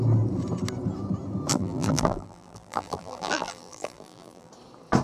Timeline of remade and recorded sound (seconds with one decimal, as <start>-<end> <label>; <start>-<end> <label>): 0.0-1.5 recorded; 1.5-4.5 remade; 4.5-5.0 recorded